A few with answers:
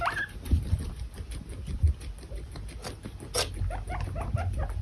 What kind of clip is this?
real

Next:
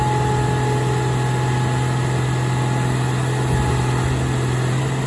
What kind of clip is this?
real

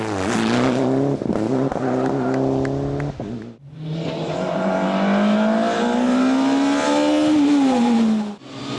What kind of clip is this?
real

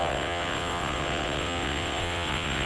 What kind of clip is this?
fake